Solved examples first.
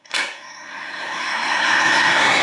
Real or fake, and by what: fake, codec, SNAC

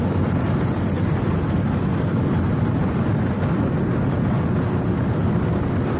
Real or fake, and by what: real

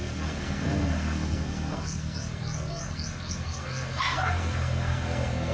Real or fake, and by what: fake, codec, SNAC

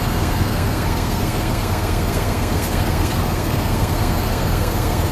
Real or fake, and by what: fake, codec, SNAC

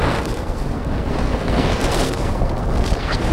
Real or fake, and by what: fake, codec, SNAC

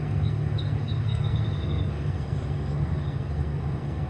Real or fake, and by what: fake, codec, SNAC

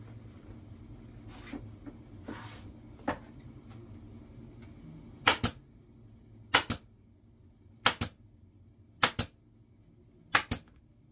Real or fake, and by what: real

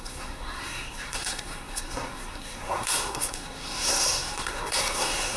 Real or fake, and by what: fake, codec, SNAC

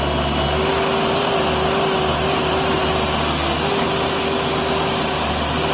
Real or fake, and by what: real